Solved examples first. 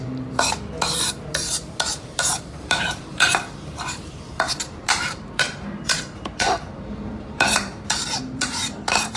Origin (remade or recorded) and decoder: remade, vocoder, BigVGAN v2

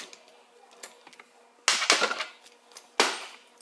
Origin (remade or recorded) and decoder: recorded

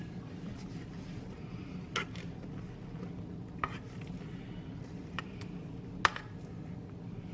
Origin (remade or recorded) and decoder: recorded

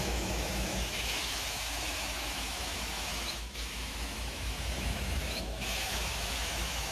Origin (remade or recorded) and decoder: remade, autoencoder, DAC-VAE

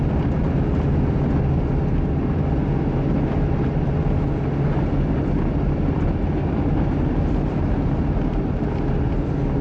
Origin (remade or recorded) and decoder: recorded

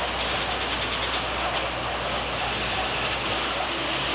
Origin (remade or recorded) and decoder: recorded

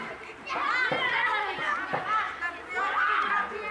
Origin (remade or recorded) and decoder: recorded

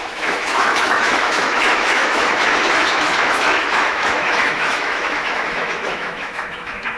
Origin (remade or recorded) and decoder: remade, autoencoder, DAC-VAE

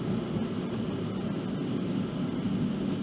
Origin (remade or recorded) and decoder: recorded